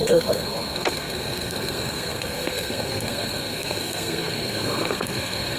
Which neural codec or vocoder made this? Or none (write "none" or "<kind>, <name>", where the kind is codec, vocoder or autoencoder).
codec, SNAC